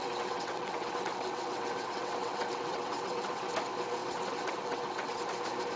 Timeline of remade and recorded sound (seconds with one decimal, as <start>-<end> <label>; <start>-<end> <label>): 0.0-3.5 remade; 3.5-4.0 recorded; 4.0-5.2 remade; 5.2-5.8 recorded